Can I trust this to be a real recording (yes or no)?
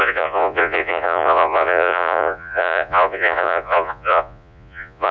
no